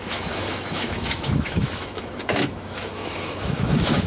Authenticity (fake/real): fake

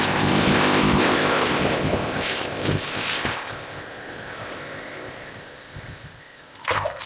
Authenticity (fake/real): fake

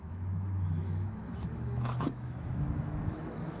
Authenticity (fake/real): fake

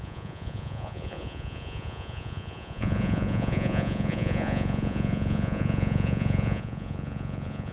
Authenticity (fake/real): fake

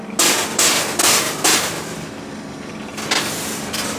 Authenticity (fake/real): real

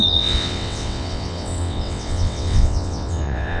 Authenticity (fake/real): fake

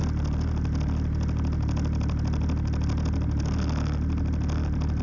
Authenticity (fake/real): real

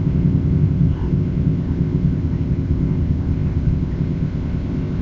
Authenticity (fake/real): fake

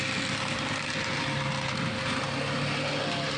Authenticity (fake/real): real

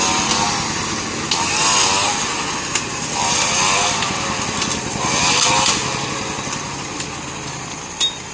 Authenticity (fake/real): real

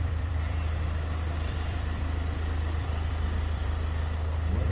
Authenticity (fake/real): fake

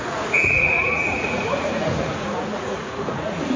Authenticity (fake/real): fake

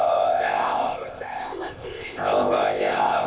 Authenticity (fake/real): fake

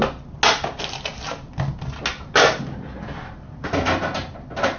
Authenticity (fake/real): real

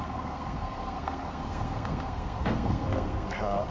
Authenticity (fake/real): fake